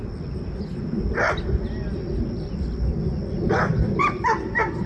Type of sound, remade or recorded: recorded